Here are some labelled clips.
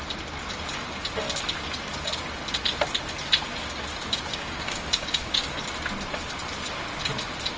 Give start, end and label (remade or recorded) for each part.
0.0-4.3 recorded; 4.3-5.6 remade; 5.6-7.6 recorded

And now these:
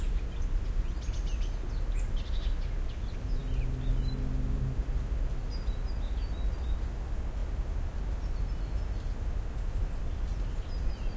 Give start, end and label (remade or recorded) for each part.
0.0-11.2 recorded

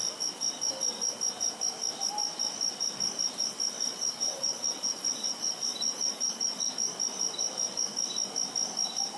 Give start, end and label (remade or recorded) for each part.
0.0-3.9 recorded; 3.9-6.7 remade; 6.7-9.2 recorded